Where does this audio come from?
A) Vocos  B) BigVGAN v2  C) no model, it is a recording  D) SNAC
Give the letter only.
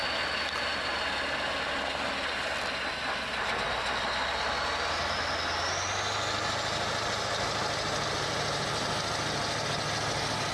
C